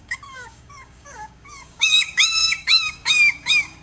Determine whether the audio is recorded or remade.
remade